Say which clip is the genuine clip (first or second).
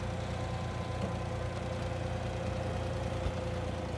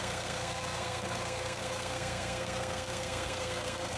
first